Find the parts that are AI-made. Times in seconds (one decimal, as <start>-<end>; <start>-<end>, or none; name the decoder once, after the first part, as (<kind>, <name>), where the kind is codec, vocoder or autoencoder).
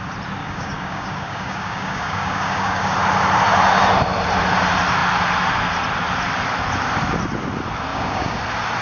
0.4-2.9 (codec, DAC); 7.9-8.4